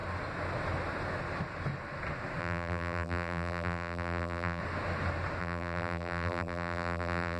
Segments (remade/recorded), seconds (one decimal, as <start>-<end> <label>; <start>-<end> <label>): 0.0-2.4 recorded; 2.4-4.6 remade; 4.6-5.4 recorded; 5.4-7.4 remade